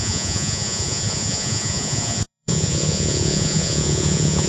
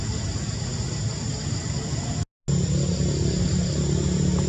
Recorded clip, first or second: second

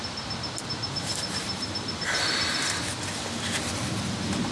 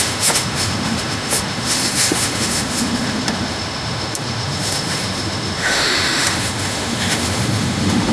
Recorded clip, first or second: first